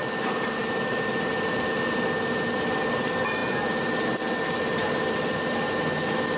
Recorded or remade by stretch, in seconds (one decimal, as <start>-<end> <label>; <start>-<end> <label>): 0.0-6.4 recorded